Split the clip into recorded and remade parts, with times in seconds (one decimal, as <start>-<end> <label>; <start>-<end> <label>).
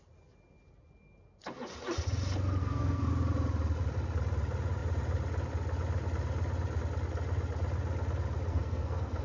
0.0-2.6 recorded; 2.6-3.1 remade; 3.1-8.5 recorded; 8.5-9.2 remade